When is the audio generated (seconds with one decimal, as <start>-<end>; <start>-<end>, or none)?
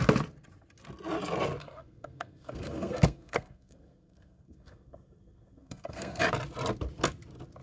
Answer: 1.6-6.2